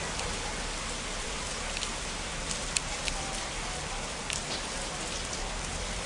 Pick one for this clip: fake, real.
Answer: fake